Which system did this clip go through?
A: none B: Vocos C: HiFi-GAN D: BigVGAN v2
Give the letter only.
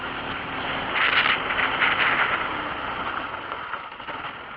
A